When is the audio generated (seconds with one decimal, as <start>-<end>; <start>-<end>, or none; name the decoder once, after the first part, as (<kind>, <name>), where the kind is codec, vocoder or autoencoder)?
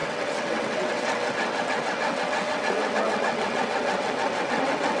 0.0-5.0 (vocoder, WaveNeXt)